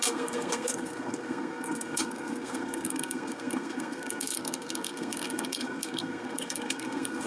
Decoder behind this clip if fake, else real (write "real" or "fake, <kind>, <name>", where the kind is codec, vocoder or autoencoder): fake, codec, SNAC